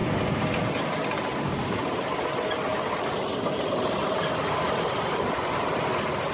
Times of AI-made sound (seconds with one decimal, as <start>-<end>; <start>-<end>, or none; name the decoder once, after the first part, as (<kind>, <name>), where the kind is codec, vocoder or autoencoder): none